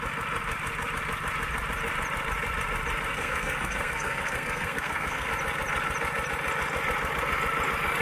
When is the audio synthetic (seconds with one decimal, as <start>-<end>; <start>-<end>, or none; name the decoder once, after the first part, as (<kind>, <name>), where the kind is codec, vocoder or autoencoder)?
3.1-5.3 (codec, SNAC)